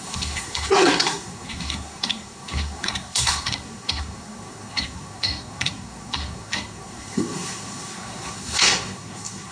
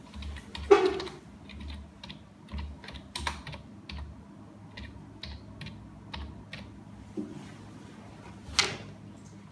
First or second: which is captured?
second